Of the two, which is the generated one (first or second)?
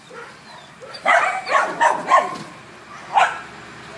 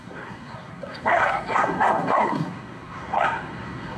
second